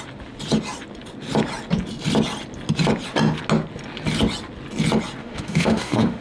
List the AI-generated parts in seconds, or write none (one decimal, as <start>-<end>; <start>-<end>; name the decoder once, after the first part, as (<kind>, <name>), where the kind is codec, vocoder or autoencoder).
5.2-6.2 (autoencoder, DAC-VAE)